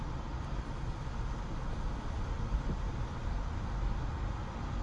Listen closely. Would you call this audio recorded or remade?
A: recorded